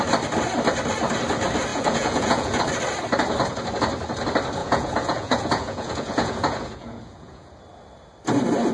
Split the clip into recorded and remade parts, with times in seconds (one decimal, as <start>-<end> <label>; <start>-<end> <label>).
0.0-1.7 recorded; 1.7-2.6 remade; 2.6-4.6 recorded; 4.6-7.5 remade; 7.5-8.7 recorded

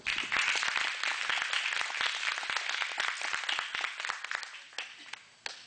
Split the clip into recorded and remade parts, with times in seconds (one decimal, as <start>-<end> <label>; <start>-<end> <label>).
0.0-5.7 recorded